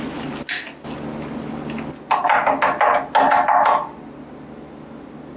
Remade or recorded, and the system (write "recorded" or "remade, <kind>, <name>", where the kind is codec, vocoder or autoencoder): recorded